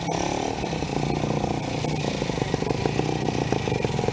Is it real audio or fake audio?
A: real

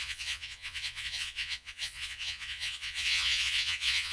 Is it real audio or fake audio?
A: fake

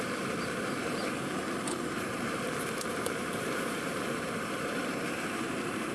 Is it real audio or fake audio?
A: fake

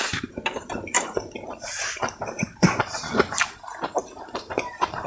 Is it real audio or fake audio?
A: fake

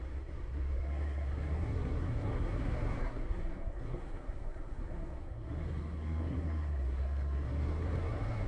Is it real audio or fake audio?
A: fake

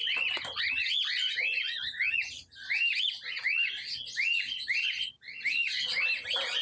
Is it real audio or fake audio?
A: real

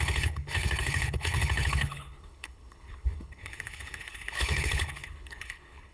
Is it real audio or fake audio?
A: fake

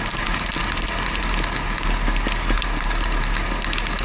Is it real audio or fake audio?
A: real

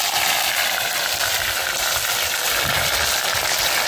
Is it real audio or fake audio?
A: fake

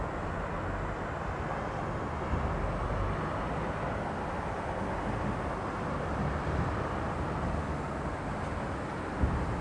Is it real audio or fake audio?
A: real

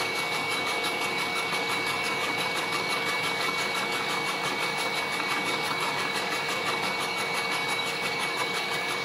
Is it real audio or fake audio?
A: fake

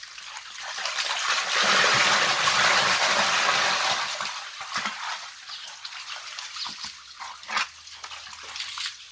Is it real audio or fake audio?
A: real